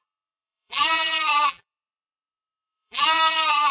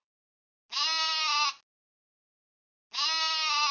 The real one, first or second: second